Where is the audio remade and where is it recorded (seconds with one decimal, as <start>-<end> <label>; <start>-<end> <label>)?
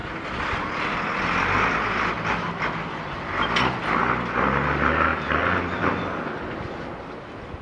0.0-7.6 recorded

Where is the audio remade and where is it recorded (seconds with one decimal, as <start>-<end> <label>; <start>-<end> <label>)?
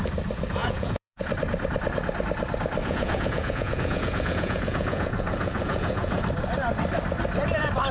0.0-0.6 recorded; 0.6-1.2 remade; 1.2-2.8 recorded; 2.8-6.2 remade; 6.2-7.9 recorded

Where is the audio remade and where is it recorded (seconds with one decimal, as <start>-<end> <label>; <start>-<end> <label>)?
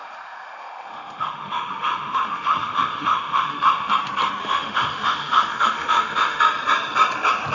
0.0-3.9 remade; 3.9-4.4 recorded; 4.4-6.4 remade; 6.4-7.5 recorded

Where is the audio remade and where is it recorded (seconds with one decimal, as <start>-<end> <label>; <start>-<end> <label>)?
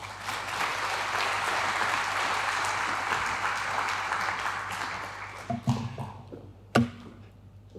0.0-7.8 recorded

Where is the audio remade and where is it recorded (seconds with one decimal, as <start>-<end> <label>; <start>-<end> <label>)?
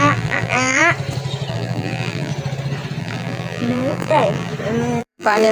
0.0-0.8 remade; 0.8-1.5 recorded; 1.5-2.3 remade; 2.3-3.0 recorded; 3.0-4.5 remade; 4.5-5.0 recorded; 5.0-5.5 remade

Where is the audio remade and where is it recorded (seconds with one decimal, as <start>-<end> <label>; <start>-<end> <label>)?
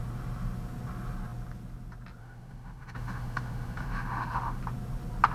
0.0-2.2 recorded; 2.2-4.6 remade; 4.6-5.3 recorded